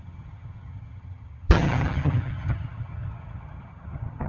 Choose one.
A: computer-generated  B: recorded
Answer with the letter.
A